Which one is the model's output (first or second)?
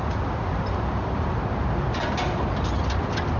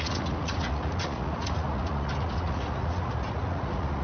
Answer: second